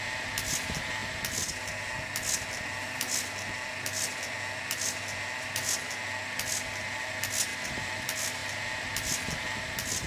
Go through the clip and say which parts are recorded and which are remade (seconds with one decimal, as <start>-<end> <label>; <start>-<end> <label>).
0.0-7.5 recorded; 7.5-8.0 remade; 8.0-10.1 recorded